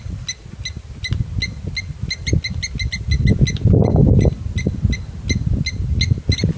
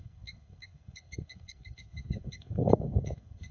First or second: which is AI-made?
second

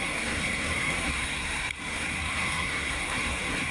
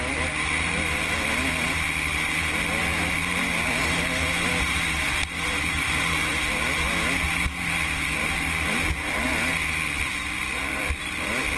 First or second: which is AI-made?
first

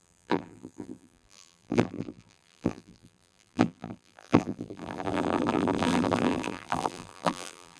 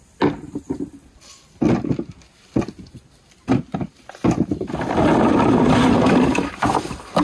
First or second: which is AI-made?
first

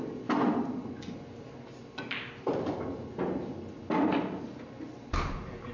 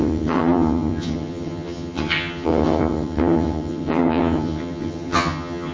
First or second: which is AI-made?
second